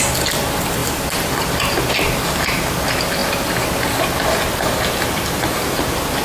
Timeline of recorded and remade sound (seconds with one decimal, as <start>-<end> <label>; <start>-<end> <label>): 0.0-6.2 recorded

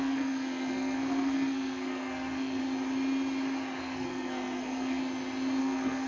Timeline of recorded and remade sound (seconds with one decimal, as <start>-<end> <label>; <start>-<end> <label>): 0.0-2.6 remade; 2.6-3.8 recorded; 3.8-5.0 remade; 5.0-5.6 recorded; 5.6-6.1 remade

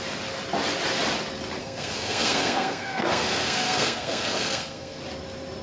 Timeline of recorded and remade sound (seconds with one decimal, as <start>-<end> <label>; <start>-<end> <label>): 0.0-1.6 recorded; 1.6-5.0 remade; 5.0-5.6 recorded

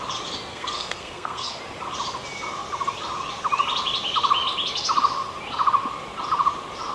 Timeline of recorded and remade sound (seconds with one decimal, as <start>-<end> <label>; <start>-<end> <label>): 0.0-0.5 recorded; 0.5-1.6 remade; 1.6-6.9 recorded

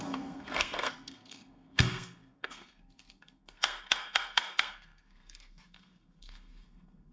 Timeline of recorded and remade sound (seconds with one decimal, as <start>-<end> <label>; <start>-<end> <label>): 0.0-7.1 remade

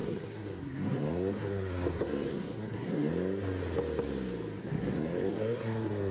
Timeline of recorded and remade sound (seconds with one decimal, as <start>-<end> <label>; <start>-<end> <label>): 0.0-3.1 remade; 3.1-4.6 recorded; 4.6-6.1 remade

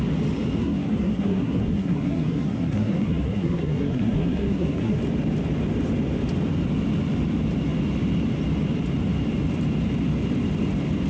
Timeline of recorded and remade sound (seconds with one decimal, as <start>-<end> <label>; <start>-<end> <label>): 0.0-0.6 recorded; 0.6-5.0 remade; 5.0-11.1 recorded